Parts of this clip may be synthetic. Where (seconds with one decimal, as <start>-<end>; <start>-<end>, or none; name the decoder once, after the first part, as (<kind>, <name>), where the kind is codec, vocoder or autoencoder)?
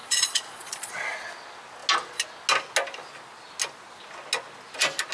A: 0.0-0.9 (vocoder, Vocos)